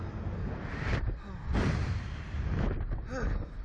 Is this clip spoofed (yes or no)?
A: no